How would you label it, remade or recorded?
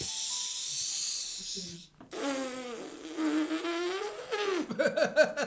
recorded